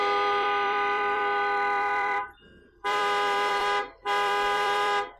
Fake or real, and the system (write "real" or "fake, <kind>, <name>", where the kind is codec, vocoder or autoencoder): fake, vocoder, BigVGAN v2